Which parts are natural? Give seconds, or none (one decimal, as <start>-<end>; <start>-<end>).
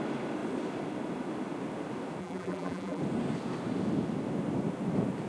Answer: 0.0-2.2; 3.0-5.3